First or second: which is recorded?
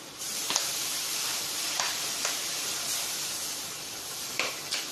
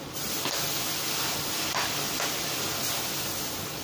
second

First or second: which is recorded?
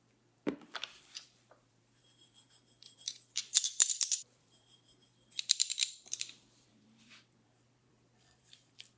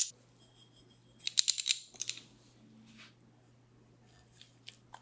second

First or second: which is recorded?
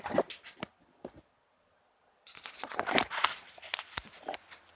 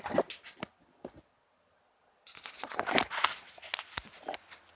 second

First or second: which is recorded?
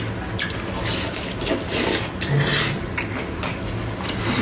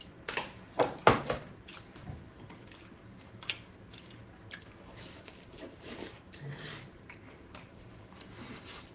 first